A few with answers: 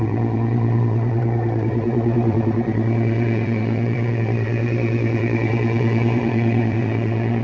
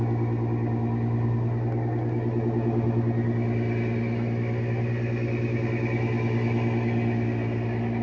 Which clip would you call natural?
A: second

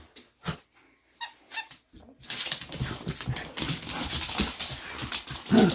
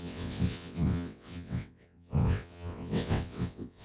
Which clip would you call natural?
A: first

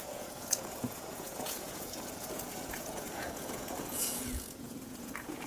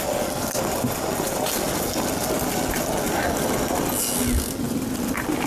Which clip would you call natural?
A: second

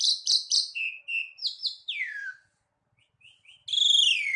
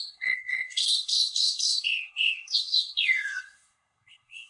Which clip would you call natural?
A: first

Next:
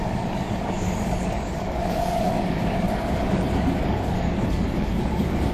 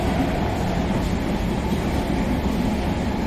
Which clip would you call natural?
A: second